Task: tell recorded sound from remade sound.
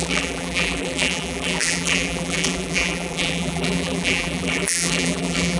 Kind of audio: remade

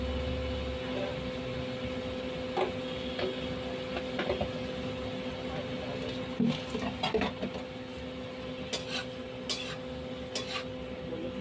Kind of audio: recorded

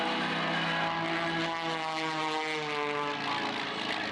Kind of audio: recorded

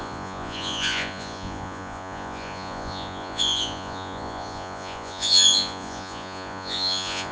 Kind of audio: remade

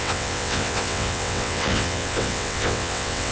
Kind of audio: remade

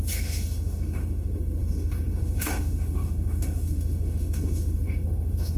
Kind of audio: remade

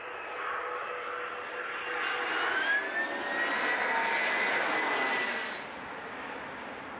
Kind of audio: recorded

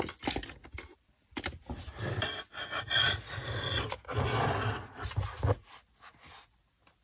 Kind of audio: recorded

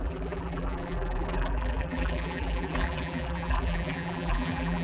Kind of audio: remade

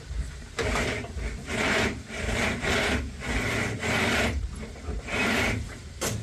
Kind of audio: recorded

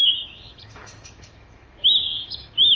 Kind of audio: remade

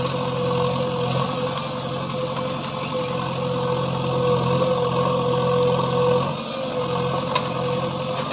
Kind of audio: recorded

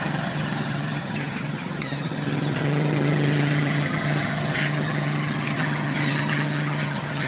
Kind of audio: remade